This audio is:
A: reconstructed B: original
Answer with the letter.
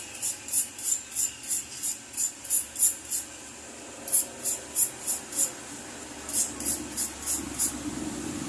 B